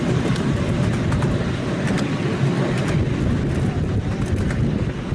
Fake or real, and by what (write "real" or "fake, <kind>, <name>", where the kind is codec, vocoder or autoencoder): real